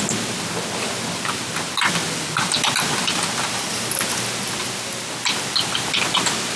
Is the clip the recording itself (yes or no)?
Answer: yes